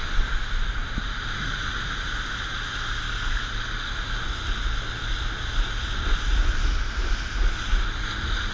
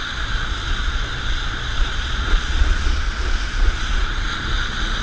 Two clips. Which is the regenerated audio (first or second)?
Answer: second